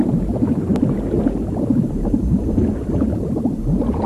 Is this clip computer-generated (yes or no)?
no